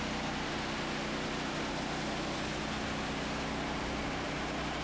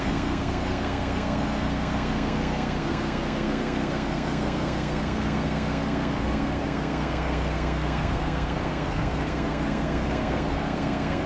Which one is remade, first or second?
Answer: second